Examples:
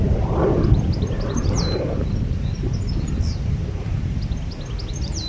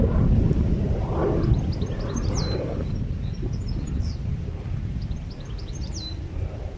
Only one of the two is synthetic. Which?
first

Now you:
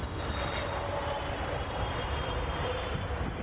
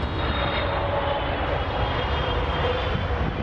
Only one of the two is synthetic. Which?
first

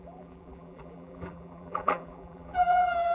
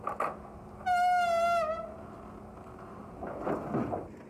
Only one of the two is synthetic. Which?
first